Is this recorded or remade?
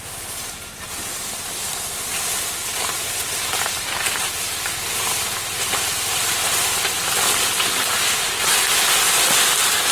recorded